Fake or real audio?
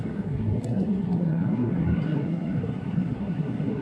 fake